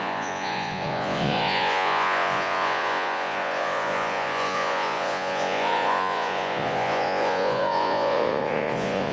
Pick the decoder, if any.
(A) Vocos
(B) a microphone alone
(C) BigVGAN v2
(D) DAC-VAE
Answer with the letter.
A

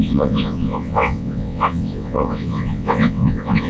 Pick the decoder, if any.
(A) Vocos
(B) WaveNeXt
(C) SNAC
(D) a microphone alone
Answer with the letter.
B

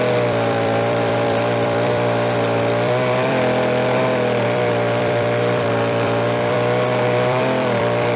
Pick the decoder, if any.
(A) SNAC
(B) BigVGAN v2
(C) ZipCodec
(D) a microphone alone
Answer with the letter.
B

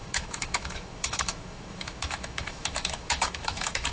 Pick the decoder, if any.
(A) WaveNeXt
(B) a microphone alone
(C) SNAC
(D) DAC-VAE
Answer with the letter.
D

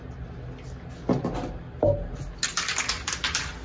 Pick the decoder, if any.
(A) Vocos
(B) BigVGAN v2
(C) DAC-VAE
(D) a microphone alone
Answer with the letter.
D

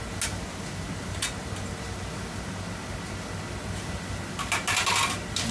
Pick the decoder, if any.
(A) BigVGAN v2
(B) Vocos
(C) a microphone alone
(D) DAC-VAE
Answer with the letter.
C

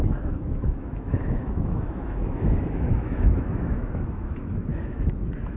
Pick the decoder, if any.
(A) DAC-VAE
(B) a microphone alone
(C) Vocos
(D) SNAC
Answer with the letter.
A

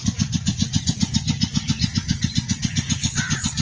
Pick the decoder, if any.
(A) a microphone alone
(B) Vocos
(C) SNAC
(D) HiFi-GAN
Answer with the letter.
B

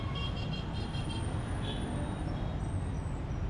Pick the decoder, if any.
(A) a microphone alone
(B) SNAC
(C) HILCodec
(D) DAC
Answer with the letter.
A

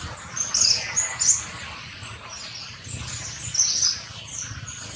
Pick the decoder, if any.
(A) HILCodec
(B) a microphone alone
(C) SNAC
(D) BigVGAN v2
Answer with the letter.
B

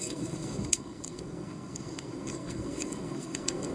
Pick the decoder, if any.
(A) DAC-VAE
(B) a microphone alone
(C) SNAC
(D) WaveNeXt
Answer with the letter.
C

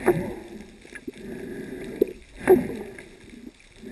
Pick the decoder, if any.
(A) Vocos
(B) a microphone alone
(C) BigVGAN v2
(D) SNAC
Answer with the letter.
B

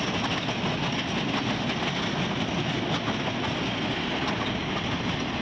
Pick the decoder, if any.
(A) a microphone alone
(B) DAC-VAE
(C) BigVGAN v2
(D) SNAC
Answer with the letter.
A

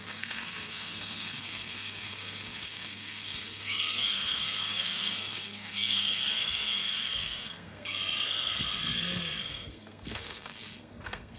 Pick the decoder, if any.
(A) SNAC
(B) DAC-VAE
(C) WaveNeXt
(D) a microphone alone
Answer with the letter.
A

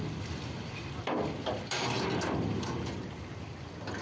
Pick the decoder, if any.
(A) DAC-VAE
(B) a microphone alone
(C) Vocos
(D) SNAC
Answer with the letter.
B